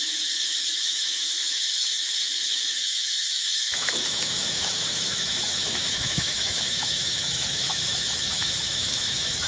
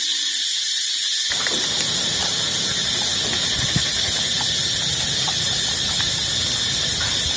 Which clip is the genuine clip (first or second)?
second